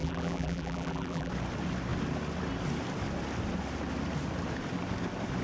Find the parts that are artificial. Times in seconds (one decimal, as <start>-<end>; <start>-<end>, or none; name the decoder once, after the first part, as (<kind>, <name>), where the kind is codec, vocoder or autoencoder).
0.0-1.3 (vocoder, BigVGAN v2)